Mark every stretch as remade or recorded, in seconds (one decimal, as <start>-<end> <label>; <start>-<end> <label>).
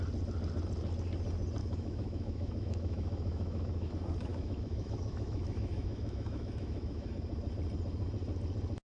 0.0-1.6 recorded; 1.6-3.9 remade; 3.9-4.3 recorded; 4.3-7.1 remade; 7.1-8.9 recorded